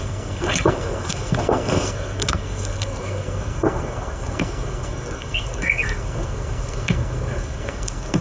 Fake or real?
fake